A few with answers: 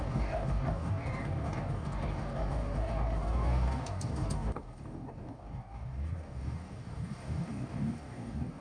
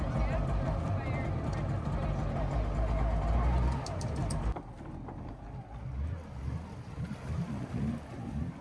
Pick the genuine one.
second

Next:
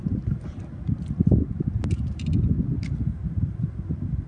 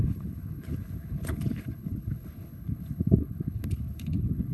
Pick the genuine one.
first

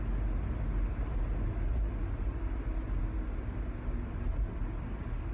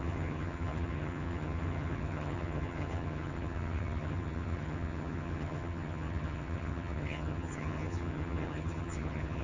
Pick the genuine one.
first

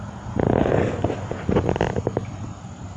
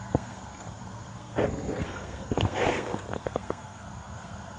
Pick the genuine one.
first